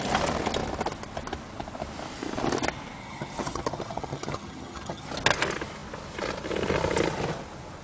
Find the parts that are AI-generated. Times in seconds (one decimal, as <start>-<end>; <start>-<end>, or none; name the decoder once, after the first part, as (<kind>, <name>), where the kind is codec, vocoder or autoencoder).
3.0-5.1 (vocoder, HiFi-GAN)